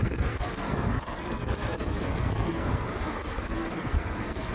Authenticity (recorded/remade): remade